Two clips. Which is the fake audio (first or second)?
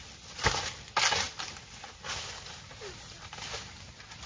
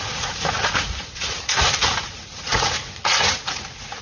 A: second